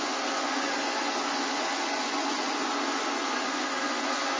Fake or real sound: fake